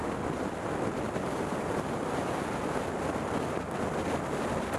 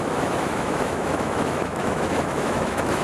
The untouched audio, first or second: first